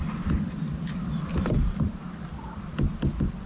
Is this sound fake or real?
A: real